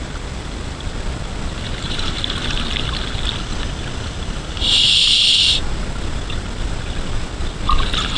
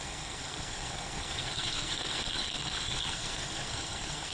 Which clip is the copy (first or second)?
second